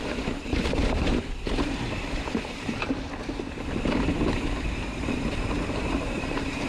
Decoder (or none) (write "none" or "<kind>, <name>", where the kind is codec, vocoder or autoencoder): vocoder, BigVGAN v2